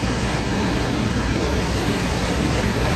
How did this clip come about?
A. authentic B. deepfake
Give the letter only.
B